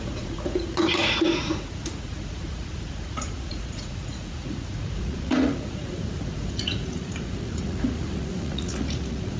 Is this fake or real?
fake